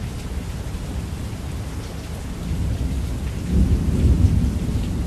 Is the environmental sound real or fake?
real